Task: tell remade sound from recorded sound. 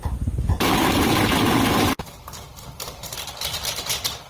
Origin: remade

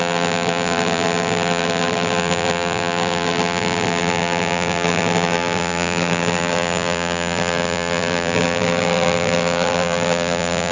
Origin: remade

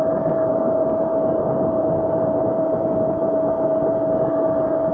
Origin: recorded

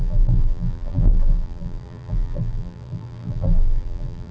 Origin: remade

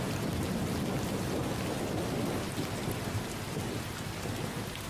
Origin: recorded